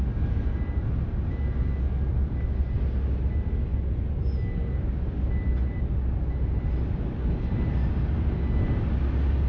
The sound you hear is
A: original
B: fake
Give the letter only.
A